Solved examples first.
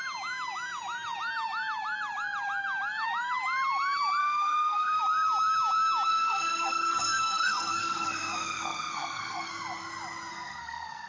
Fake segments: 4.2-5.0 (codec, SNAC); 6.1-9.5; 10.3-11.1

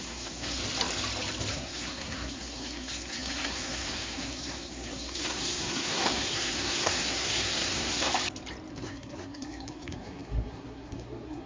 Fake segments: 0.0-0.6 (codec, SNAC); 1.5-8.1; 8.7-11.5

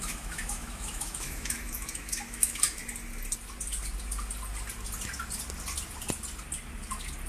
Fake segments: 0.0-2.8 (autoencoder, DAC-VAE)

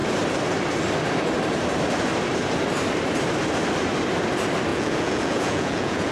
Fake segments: 4.7-6.1 (vocoder, Vocos)

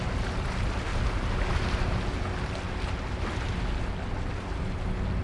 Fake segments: none

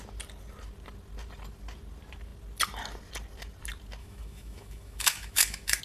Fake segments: 4.0-5.8 (autoencoder, DAC-VAE)

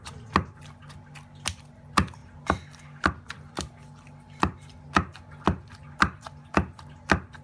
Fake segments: none